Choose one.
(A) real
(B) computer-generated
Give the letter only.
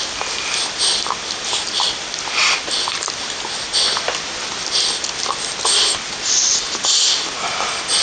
A